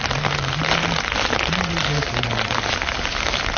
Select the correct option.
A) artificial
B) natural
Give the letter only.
B